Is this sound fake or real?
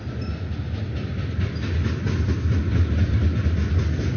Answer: real